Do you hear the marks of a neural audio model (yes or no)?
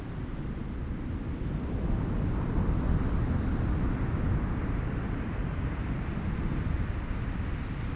no